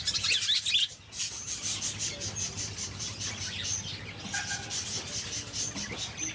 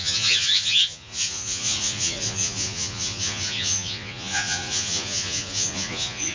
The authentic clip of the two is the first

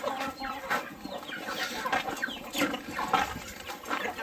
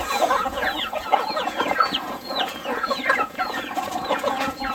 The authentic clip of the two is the first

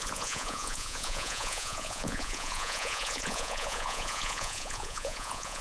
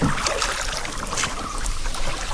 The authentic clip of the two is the second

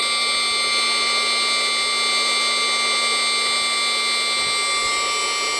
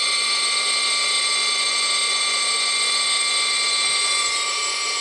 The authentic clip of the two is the first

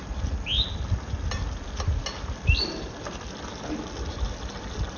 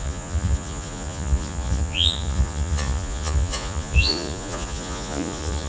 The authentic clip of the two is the first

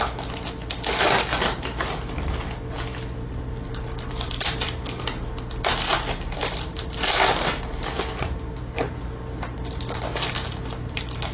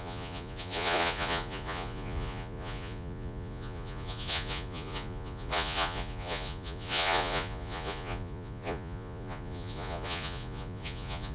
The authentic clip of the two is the first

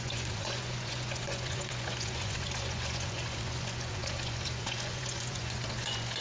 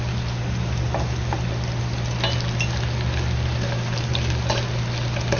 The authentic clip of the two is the second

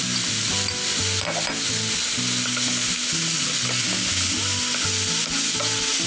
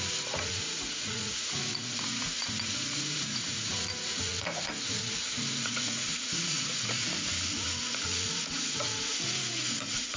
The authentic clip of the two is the first